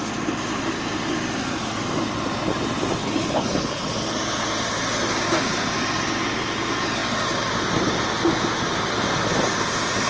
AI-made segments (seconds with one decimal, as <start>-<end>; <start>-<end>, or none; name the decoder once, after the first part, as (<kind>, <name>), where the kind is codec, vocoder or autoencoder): 3.0-3.9 (codec, HILCodec)